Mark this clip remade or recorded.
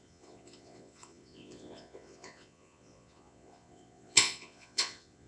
remade